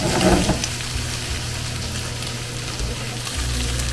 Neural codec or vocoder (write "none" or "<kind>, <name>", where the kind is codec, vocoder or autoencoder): none